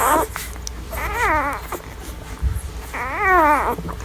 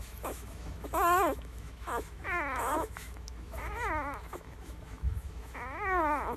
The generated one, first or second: second